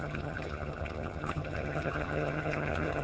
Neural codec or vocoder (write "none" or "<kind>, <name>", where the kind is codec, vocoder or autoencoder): vocoder, HiFi-GAN